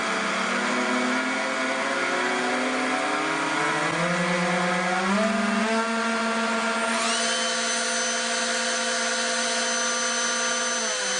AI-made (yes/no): no